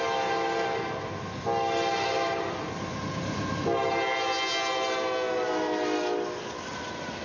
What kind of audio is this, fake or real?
real